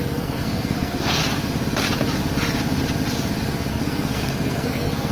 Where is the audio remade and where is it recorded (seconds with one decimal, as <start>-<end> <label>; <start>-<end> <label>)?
0.0-1.2 remade; 1.2-3.7 recorded; 3.7-5.1 remade